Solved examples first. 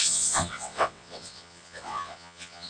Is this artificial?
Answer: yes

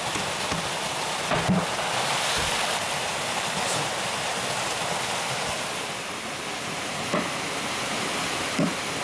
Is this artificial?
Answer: no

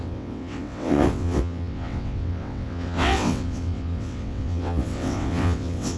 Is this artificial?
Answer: yes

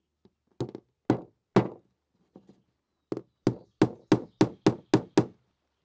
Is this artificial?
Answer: no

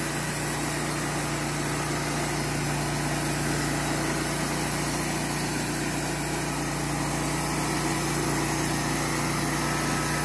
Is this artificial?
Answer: no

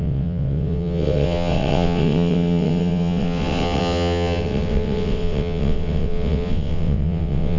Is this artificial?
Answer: yes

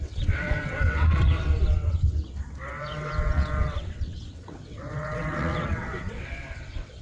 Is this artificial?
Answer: yes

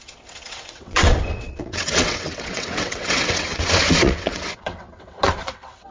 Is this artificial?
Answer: yes